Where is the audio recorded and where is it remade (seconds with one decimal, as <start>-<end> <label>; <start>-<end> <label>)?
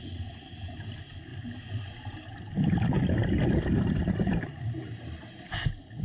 0.0-6.0 recorded